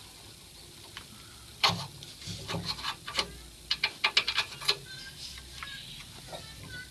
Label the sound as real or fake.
real